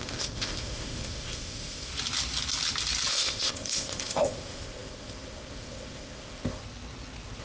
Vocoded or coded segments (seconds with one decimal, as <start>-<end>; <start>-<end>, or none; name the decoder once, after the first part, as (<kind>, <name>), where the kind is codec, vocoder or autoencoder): 0.0-1.9 (codec, ZipCodec); 3.1-6.6

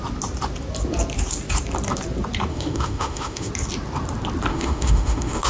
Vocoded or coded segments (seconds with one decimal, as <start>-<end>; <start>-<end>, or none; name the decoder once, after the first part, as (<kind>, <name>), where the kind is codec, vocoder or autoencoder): 2.5-3.5 (autoencoder, DAC-VAE); 4.5-5.5

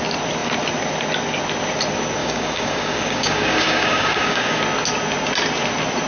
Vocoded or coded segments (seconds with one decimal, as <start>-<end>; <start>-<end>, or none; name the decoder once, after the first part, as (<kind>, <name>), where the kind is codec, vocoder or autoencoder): 2.2-4.6 (codec, DAC)

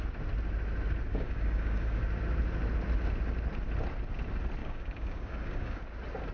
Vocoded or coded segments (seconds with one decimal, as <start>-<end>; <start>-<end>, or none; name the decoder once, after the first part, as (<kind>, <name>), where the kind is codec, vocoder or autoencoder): 1.1-2.0 (codec, DAC); 4.6-5.8

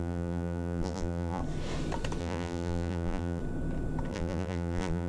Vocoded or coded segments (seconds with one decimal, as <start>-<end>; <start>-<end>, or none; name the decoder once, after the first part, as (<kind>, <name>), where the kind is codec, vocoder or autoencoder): 0.0-1.4 (vocoder, BigVGAN v2); 2.2-3.4; 4.1-5.1

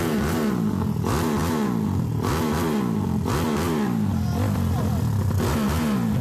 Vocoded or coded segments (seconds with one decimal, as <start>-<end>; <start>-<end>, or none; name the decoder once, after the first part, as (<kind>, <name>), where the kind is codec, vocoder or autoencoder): none

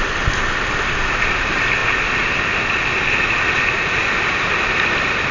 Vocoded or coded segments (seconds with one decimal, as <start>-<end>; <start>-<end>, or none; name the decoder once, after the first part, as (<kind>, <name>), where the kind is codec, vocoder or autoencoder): none